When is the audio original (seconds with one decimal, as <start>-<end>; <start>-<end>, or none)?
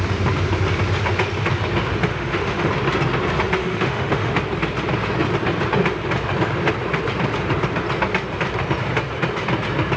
0.0-2.1; 2.7-3.6; 4.3-10.0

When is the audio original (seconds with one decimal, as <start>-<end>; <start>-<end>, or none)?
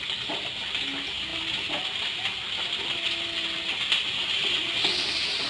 0.0-5.5